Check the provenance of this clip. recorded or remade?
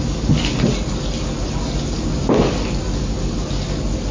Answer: recorded